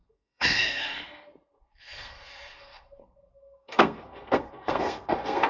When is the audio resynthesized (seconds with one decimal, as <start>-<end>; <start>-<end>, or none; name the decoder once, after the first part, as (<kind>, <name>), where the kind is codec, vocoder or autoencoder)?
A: 0.0-5.5 (codec, SNAC)